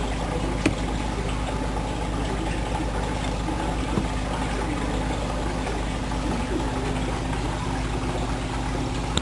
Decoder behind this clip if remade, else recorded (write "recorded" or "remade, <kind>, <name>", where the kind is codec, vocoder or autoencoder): recorded